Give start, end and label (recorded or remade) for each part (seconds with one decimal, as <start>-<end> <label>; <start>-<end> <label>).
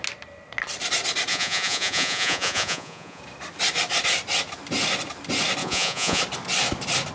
0.0-1.3 recorded; 1.3-3.2 remade; 3.2-5.6 recorded; 5.6-6.2 remade; 6.2-7.1 recorded